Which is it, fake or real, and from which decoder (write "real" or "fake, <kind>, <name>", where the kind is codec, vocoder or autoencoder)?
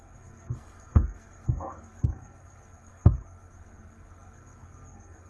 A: fake, codec, SNAC